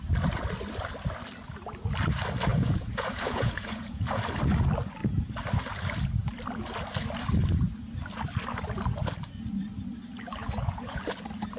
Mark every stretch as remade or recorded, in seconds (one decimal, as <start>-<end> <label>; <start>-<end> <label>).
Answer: 0.0-2.5 recorded; 2.5-4.2 remade; 4.2-10.4 recorded; 10.4-11.0 remade; 11.0-11.6 recorded